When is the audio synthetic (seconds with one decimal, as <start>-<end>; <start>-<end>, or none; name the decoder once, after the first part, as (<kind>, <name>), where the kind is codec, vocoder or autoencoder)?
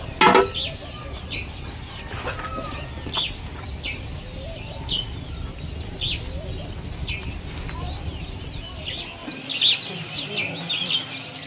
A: none